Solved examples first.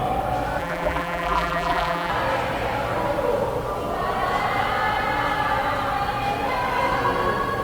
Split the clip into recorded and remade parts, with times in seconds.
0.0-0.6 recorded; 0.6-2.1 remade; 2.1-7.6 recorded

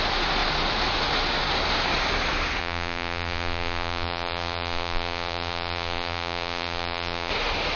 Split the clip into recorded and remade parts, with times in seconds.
0.0-2.6 recorded; 2.6-7.3 remade; 7.3-7.8 recorded

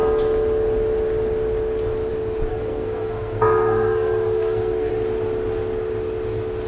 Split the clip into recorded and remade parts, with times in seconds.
0.0-2.5 recorded; 2.5-4.9 remade; 4.9-6.7 recorded

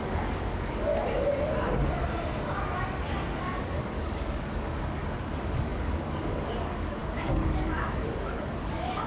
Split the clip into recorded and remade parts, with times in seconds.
0.0-0.9 remade; 0.9-3.4 recorded; 3.4-9.1 remade

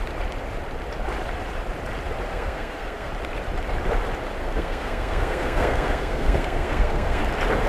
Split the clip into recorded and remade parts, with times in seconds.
0.0-2.3 recorded; 2.3-3.1 remade; 3.1-4.4 recorded; 4.4-7.2 remade; 7.2-7.7 recorded

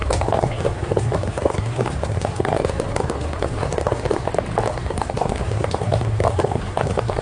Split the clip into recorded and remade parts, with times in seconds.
0.0-4.3 remade; 4.3-4.7 recorded; 4.7-7.2 remade

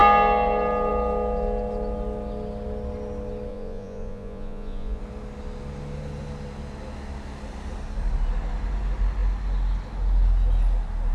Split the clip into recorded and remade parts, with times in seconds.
0.0-3.5 recorded; 3.5-5.0 remade; 5.0-11.1 recorded

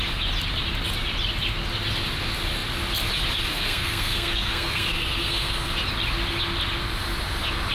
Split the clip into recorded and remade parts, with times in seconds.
0.0-3.5 recorded; 3.5-5.7 remade; 5.7-7.7 recorded